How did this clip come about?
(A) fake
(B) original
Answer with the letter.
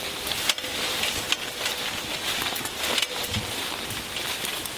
B